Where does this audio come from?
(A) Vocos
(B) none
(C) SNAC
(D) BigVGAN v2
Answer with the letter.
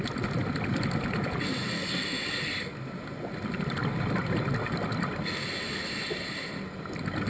B